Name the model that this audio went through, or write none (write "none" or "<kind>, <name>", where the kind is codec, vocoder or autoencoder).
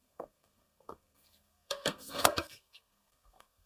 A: codec, SNAC